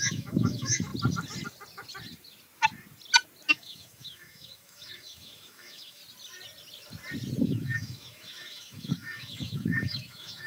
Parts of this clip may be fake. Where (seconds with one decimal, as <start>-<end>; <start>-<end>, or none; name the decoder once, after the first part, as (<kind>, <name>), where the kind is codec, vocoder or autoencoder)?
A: 0.0-0.9 (autoencoder, DAC-VAE); 3.5-6.0; 7.4-10.5